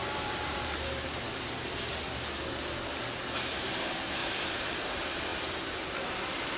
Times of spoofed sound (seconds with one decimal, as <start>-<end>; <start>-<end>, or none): 0.0-1.3; 4.2-4.8; 5.3-6.6